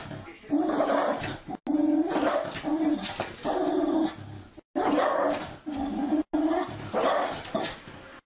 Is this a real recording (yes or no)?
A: yes